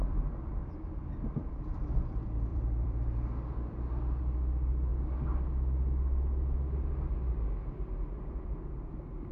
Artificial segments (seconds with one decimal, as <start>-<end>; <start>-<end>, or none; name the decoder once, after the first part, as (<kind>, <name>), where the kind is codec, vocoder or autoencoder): 0.0-0.6 (vocoder, BigVGAN v2); 1.2-4.9; 8.4-9.3